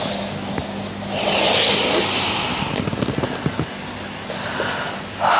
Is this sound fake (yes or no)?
no